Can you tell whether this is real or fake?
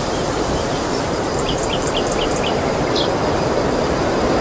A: fake